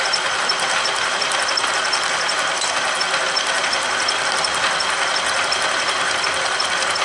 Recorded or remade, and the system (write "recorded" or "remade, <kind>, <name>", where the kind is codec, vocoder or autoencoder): recorded